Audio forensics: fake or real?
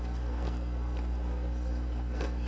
fake